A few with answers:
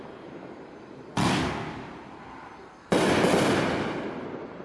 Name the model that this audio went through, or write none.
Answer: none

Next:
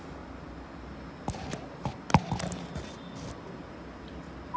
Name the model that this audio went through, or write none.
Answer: none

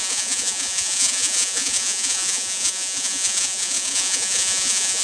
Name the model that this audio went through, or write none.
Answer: vocoder, Vocos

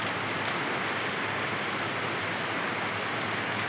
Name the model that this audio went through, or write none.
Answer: none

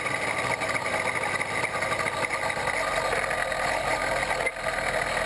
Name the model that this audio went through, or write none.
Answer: none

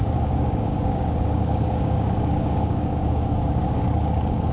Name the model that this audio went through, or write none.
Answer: codec, DAC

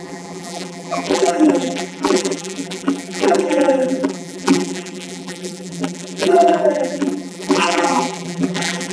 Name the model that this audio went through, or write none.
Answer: vocoder, BigVGAN v2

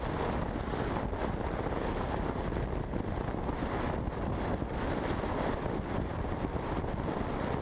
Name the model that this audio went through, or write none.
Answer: none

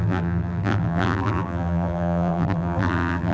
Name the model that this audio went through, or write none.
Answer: vocoder, BigVGAN v2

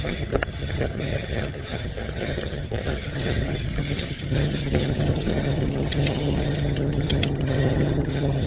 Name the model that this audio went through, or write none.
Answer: vocoder, HiFi-GAN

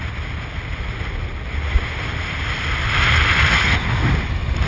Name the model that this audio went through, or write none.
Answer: none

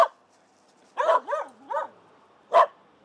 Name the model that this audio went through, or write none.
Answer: none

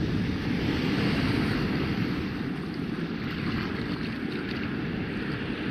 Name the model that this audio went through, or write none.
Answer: none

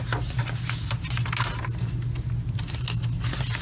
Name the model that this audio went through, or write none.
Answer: none